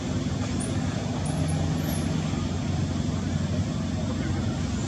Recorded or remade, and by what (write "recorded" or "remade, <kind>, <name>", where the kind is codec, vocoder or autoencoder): recorded